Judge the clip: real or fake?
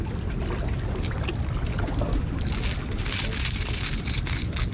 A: real